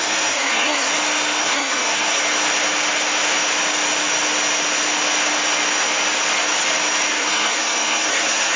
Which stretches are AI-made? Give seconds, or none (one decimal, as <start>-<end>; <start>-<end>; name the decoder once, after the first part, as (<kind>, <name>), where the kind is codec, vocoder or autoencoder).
0.0-0.9 (codec, SNAC); 1.4-2.2; 7.1-8.6

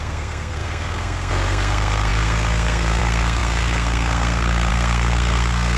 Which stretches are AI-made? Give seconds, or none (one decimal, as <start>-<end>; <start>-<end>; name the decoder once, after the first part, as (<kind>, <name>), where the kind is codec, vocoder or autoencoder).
0.0-5.8 (codec, SNAC)

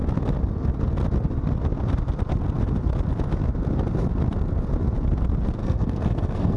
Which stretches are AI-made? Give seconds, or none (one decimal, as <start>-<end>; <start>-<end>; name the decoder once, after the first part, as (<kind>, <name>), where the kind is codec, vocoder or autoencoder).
5.6-6.6 (codec, SNAC)